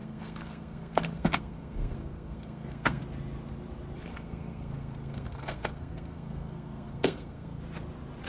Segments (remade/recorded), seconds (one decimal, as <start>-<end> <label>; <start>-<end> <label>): 0.0-3.0 remade; 3.0-4.1 recorded; 4.1-7.6 remade; 7.6-8.3 recorded